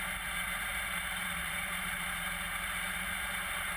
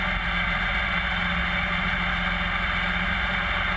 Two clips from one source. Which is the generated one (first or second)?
first